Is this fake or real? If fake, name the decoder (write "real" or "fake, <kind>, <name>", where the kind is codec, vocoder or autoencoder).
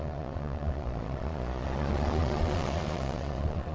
fake, vocoder, Vocos